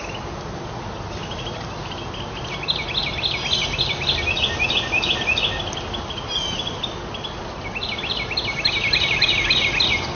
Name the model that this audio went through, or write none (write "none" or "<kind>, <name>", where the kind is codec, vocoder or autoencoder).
none